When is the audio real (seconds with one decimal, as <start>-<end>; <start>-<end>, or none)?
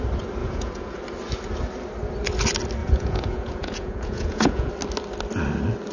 0.0-0.4; 1.0-2.8; 4.7-5.9